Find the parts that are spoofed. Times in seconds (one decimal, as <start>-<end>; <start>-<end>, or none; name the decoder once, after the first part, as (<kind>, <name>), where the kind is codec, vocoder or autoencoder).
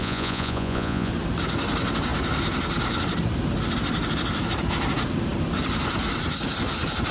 0.0-1.1 (vocoder, Vocos)